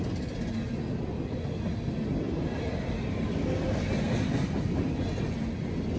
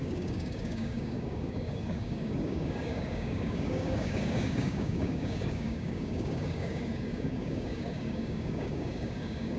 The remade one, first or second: second